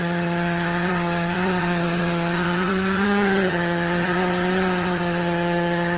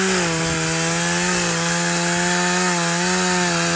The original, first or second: second